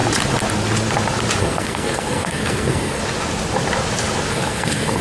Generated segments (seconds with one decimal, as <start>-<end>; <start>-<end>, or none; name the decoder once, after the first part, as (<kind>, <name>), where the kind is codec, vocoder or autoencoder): 1.4-3.0 (codec, SNAC); 4.3-5.0